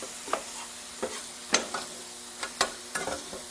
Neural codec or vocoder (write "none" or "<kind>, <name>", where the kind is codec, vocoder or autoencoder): none